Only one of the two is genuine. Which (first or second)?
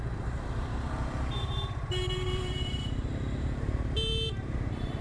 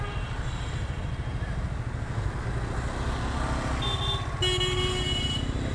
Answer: second